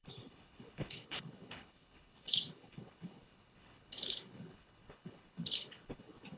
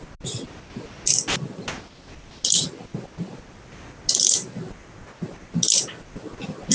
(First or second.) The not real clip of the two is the first